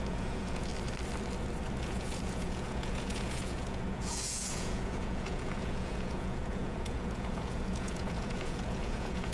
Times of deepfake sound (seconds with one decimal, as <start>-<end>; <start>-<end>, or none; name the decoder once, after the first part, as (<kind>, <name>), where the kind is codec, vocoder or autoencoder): 0.0-0.7 (vocoder, Vocos); 1.8-9.3